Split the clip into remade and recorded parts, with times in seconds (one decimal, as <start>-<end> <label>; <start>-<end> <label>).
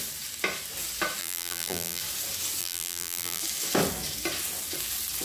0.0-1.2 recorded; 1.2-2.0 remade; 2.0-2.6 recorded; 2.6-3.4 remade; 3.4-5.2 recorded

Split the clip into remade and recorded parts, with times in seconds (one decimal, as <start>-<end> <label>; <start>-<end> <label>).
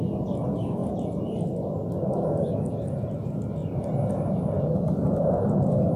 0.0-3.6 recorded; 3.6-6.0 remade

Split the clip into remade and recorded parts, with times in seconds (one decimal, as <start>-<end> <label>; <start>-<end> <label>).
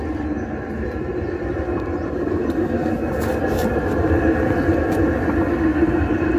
0.0-3.6 recorded; 3.6-4.8 remade; 4.8-5.7 recorded; 5.7-6.4 remade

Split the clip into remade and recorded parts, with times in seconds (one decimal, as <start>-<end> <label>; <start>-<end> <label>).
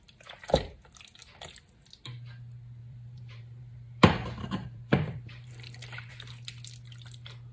0.0-2.8 recorded; 2.8-6.1 remade; 6.1-7.5 recorded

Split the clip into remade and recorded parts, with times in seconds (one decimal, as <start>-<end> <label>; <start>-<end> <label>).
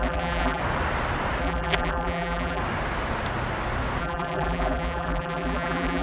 0.0-0.6 remade; 0.6-1.4 recorded; 1.4-2.6 remade; 2.6-4.0 recorded; 4.0-6.0 remade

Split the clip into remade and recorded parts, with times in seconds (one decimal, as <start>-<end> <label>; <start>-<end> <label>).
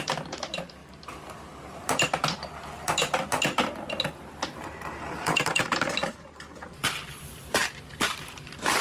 0.0-2.2 remade; 2.2-6.7 recorded; 6.7-8.8 remade